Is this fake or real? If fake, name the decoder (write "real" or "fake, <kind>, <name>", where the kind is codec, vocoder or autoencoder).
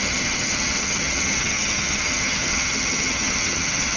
fake, vocoder, HiFi-GAN